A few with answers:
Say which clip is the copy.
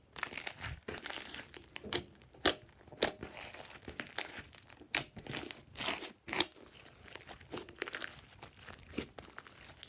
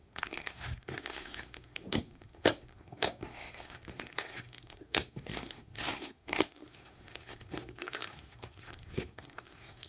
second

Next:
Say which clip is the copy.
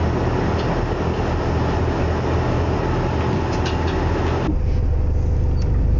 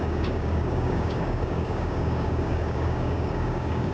second